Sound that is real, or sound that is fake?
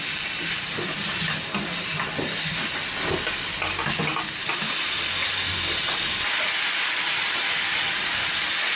real